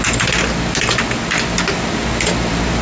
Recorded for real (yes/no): yes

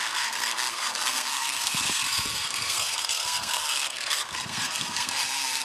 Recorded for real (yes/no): no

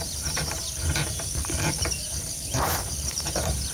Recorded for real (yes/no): no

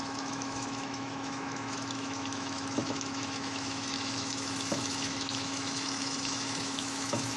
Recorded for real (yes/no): no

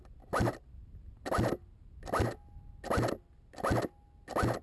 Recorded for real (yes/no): yes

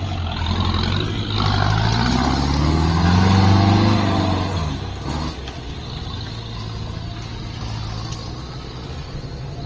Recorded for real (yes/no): yes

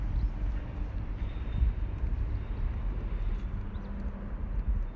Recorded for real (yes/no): yes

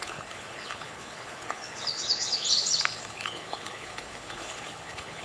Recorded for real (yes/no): no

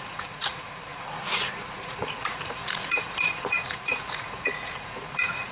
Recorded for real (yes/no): no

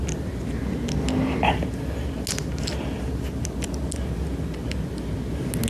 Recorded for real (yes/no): yes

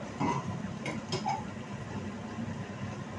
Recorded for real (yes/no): yes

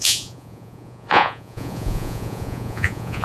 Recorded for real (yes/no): no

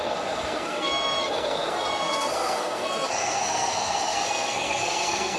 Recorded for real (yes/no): no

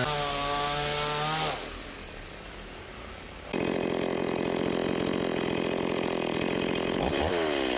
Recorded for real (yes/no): yes